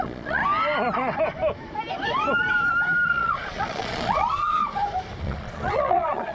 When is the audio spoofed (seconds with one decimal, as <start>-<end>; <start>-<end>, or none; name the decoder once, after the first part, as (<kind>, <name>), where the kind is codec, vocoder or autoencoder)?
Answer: 0.0-0.4 (vocoder, Vocos); 3.1-4.6; 5.2-6.3